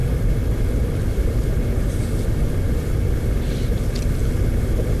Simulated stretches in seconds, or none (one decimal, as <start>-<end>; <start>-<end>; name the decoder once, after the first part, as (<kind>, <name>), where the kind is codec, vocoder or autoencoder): none